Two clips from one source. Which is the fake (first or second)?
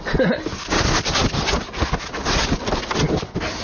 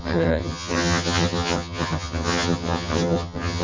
second